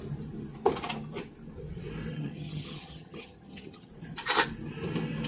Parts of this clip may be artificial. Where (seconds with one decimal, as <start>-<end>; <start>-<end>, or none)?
2.1-3.9